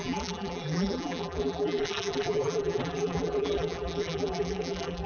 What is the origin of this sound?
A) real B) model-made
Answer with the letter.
B